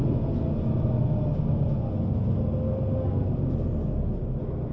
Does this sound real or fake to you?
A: real